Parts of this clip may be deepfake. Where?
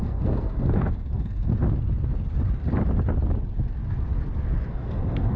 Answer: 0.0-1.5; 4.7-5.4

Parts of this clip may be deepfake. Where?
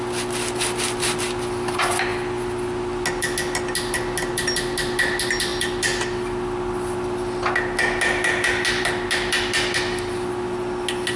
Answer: none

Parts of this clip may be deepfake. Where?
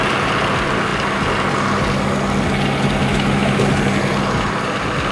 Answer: 3.0-3.6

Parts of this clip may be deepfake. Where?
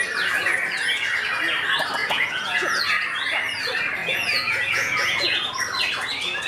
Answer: 2.0-2.8; 4.0-5.6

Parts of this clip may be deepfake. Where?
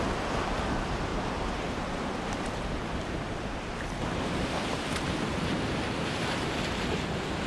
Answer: 1.1-5.6